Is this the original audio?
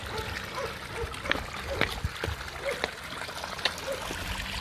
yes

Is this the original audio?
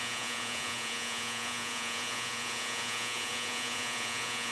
no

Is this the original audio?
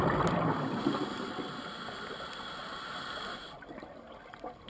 yes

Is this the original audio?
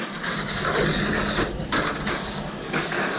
yes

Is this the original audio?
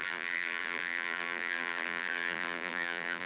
no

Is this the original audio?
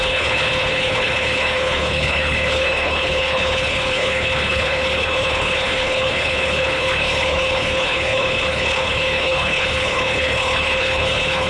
no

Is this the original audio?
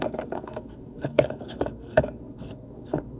no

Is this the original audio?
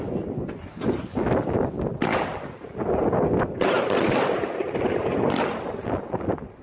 yes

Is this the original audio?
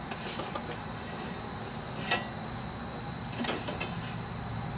yes